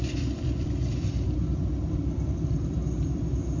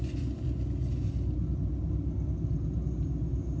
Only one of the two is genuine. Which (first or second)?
second